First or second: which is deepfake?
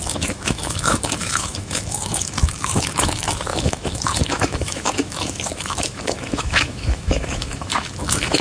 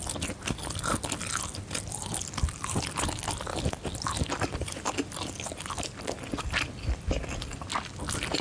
first